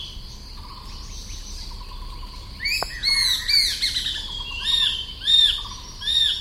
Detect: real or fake real